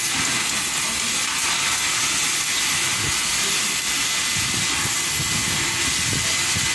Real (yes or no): yes